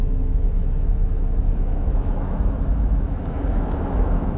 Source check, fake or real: fake